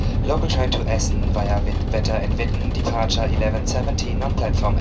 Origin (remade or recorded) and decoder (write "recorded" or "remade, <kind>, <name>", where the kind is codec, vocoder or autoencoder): recorded